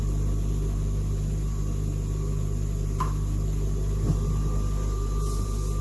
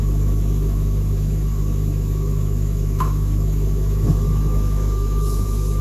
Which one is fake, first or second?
second